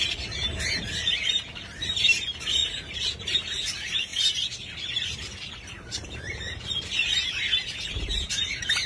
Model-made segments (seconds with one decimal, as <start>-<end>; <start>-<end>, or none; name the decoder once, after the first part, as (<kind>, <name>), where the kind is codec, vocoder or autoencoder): 0.0-2.6 (vocoder, BigVGAN v2); 3.2-8.9